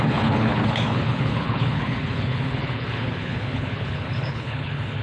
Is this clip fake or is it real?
fake